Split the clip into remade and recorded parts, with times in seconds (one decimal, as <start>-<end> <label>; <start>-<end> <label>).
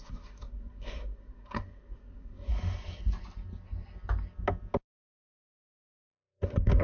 0.0-2.5 remade; 2.5-5.8 recorded; 5.8-6.8 remade